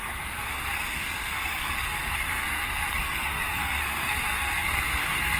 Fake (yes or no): yes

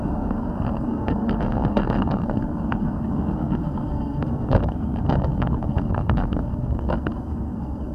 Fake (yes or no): yes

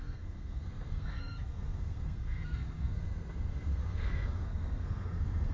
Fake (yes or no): yes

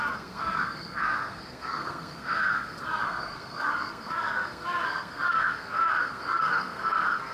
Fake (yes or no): yes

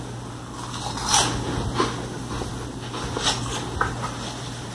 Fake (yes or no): no